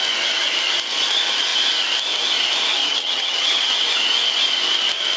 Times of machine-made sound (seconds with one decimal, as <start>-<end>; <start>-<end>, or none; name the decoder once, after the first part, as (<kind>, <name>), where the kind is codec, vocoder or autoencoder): 2.8-3.7 (vocoder, HiFi-GAN)